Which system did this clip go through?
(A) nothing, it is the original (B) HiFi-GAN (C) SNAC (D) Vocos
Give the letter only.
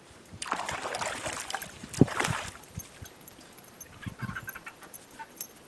A